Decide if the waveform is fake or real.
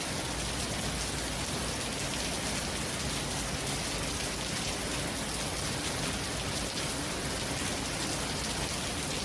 real